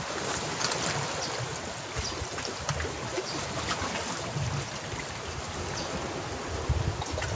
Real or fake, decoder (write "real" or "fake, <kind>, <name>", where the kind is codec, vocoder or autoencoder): real